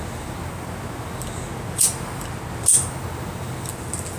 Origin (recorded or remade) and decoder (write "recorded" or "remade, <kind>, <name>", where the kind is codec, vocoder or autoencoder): recorded